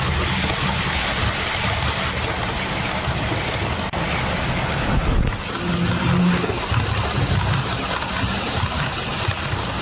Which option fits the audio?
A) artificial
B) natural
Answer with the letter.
B